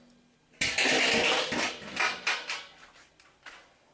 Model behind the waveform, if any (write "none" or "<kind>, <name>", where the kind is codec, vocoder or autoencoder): none